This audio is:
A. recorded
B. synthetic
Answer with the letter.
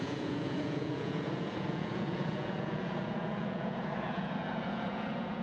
B